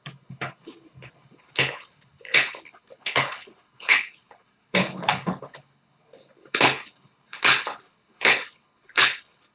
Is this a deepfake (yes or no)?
yes